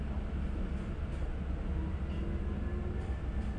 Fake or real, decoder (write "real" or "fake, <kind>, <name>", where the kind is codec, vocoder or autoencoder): real